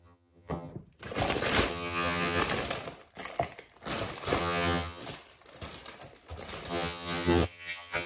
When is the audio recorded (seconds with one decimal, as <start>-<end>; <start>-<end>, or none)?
0.7-1.7; 2.4-4.4; 5.0-6.7